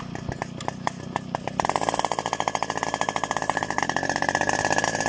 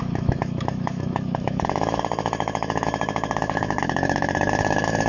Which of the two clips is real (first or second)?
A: first